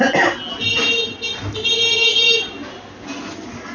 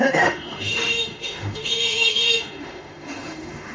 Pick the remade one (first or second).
second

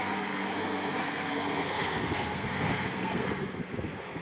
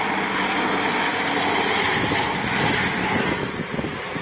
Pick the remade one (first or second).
first